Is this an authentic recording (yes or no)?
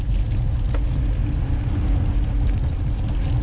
yes